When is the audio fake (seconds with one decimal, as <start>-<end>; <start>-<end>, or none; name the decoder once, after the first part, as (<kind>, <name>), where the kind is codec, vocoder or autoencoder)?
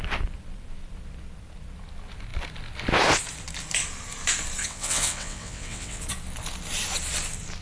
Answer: 4.6-6.0 (vocoder, WaveNeXt)